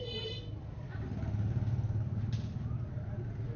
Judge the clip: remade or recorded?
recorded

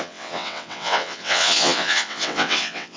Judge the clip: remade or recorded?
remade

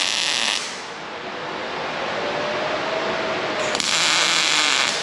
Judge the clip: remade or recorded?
recorded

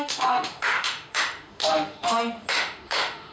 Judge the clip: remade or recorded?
remade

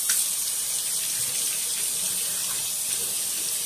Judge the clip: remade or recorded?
recorded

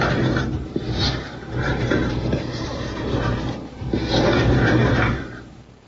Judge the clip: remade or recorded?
remade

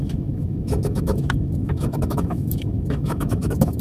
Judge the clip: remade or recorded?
remade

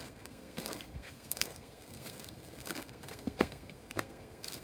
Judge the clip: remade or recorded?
remade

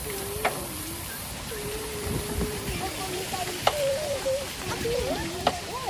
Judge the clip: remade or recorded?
remade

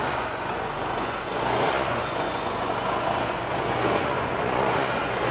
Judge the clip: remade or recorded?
remade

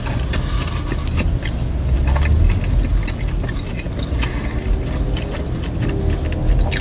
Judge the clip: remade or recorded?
recorded